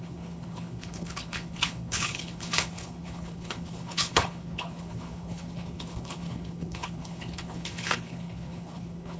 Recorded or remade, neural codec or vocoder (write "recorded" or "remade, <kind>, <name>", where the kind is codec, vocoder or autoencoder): remade, codec, HILCodec